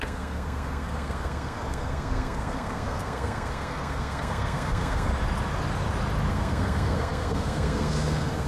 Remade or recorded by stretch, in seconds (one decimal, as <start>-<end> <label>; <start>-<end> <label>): 0.0-5.1 remade; 5.1-6.3 recorded; 6.3-8.5 remade